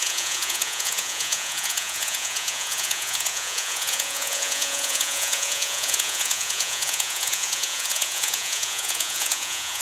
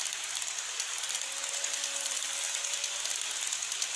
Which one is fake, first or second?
first